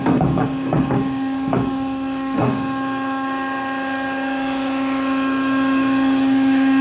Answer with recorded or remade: remade